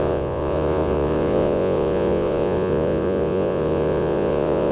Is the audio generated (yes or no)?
yes